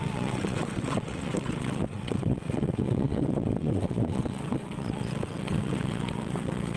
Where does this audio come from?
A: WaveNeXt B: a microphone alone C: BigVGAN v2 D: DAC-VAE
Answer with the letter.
A